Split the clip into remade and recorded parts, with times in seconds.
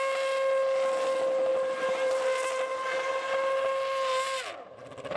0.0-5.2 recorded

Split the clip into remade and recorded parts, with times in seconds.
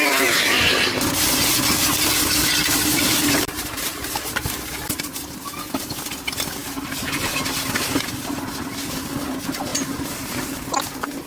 0.0-2.9 recorded; 2.9-5.0 remade; 5.0-9.7 recorded; 9.7-10.6 remade; 10.6-11.3 recorded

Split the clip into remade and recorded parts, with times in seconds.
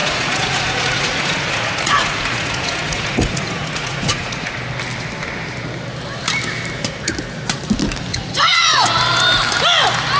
0.0-4.6 remade; 4.6-8.1 recorded; 8.1-9.0 remade; 9.0-10.2 recorded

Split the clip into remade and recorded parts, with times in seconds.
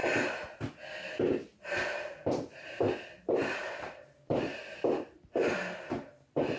0.0-1.5 recorded; 1.5-5.5 remade; 5.5-6.6 recorded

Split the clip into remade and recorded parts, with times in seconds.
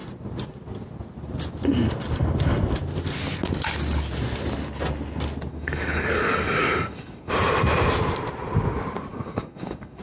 0.0-5.5 recorded; 5.5-7.3 remade; 7.3-9.1 recorded; 9.1-10.0 remade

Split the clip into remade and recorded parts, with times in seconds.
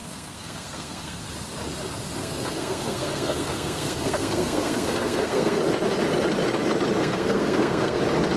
0.0-1.2 remade; 1.2-2.2 recorded; 2.2-5.6 remade; 5.6-7.0 recorded; 7.0-8.0 remade; 8.0-8.4 recorded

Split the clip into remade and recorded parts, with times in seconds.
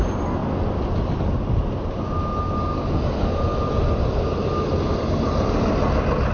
0.0-6.3 recorded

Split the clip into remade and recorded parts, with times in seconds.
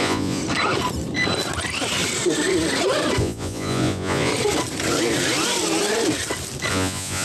0.0-0.4 remade; 0.4-3.2 recorded; 3.2-4.3 remade; 4.3-6.7 recorded; 6.7-7.2 remade